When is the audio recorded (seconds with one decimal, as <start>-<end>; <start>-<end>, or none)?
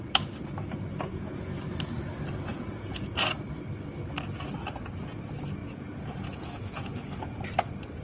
0.0-1.1; 1.6-2.5; 3.2-5.6; 7.4-8.0